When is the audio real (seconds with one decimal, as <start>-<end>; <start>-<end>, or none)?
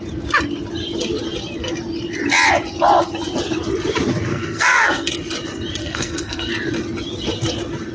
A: 0.0-4.3; 5.1-5.8; 6.5-7.9